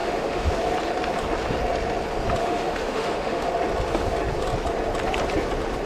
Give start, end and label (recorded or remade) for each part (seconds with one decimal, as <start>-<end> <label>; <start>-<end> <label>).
0.0-0.5 remade; 0.5-2.4 recorded; 2.4-3.5 remade; 3.5-5.9 recorded